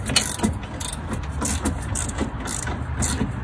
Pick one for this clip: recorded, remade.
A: recorded